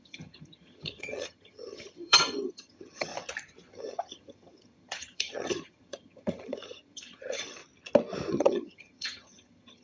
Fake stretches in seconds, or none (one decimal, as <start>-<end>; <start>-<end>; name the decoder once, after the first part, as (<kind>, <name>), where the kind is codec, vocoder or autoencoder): 0.0-3.1 (vocoder, HiFi-GAN); 3.7-7.6; 8.3-9.8